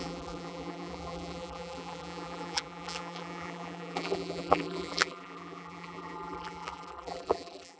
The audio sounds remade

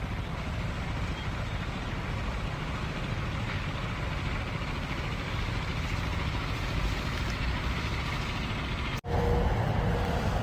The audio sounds recorded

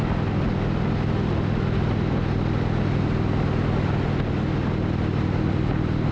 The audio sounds recorded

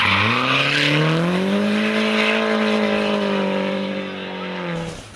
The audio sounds recorded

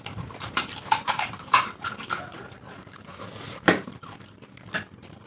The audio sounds remade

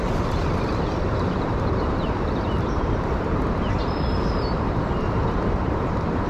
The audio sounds remade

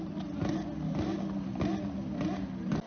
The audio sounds recorded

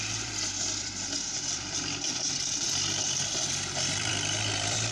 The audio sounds remade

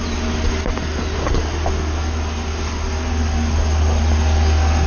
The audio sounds recorded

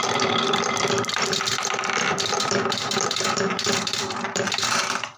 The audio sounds remade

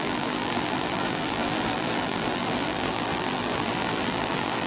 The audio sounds remade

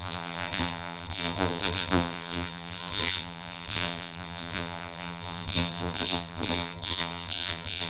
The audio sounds remade